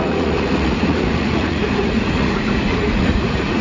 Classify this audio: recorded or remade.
remade